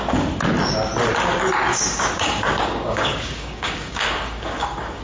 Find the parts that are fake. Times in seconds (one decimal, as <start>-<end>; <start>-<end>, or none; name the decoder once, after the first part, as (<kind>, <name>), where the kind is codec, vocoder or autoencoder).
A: 1.7-5.0 (codec, DAC)